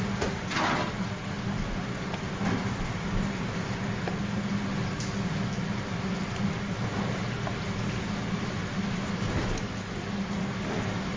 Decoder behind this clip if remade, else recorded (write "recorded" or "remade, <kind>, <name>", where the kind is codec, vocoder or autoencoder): recorded